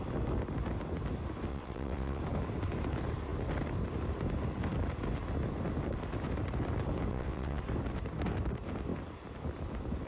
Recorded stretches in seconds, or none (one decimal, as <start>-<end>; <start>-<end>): 0.0-1.5; 2.2-7.1; 7.6-10.1